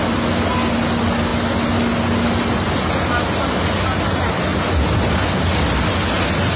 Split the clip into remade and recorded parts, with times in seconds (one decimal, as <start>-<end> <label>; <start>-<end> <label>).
0.0-6.6 recorded